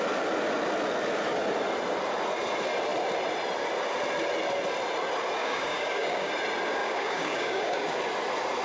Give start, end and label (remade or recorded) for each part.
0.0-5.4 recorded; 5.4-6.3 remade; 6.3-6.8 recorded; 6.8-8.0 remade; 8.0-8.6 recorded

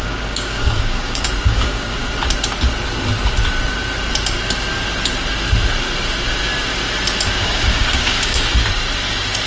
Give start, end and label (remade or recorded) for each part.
0.0-2.0 remade; 2.0-7.3 recorded; 7.3-8.6 remade; 8.6-9.5 recorded

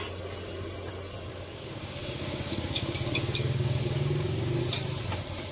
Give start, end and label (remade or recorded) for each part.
0.0-1.3 recorded; 1.3-4.6 remade; 4.6-5.5 recorded

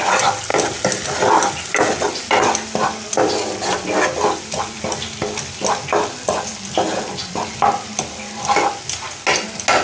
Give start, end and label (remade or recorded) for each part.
0.0-9.8 recorded

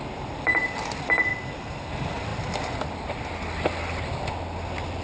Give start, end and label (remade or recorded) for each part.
0.0-5.0 recorded

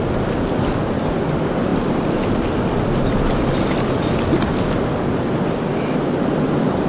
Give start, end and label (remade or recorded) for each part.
0.0-6.9 recorded

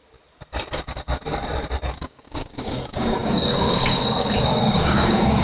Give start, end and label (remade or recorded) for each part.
0.0-2.0 recorded; 2.0-5.4 remade